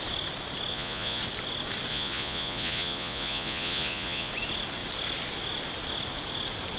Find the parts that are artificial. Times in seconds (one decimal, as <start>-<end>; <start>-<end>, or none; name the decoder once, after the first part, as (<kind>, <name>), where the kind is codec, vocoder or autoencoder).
0.7-1.2 (vocoder, Vocos); 1.9-4.3